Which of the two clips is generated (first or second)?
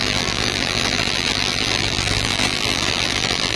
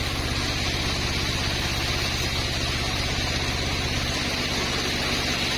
first